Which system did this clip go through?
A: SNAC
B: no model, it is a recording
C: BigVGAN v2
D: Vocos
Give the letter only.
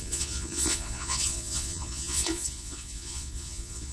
D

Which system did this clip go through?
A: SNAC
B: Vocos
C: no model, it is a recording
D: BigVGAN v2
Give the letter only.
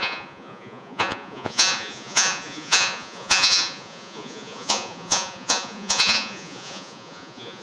B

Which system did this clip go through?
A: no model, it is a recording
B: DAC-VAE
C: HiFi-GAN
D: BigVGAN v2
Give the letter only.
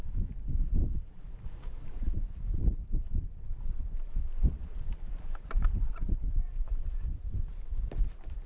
D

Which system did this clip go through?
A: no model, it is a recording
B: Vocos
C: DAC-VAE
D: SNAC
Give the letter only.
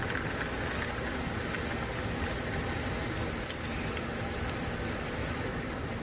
A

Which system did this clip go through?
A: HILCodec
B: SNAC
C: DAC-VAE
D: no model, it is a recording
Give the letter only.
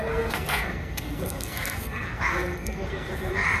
B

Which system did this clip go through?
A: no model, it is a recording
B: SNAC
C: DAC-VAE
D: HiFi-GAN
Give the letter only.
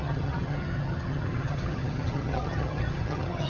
D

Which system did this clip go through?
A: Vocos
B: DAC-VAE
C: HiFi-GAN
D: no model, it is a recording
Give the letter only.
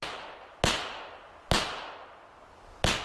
D